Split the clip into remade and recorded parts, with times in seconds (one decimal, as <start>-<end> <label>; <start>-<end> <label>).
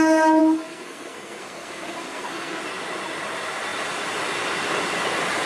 0.0-0.4 recorded; 0.4-2.6 remade; 2.6-5.5 recorded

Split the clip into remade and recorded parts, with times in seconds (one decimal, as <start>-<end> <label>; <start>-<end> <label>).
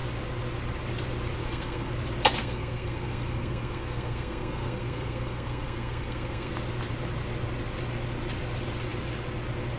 0.0-1.4 recorded; 1.4-1.9 remade; 1.9-2.4 recorded; 2.4-6.5 remade; 6.5-9.8 recorded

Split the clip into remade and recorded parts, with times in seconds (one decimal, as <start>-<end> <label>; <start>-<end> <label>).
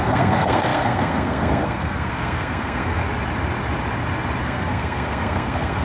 0.0-3.0 remade; 3.0-4.4 recorded; 4.4-5.8 remade